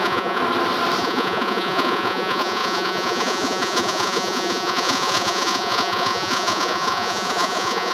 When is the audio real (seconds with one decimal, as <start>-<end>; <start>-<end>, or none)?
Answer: 0.4-1.0